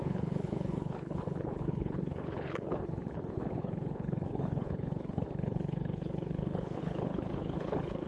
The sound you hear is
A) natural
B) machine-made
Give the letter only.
B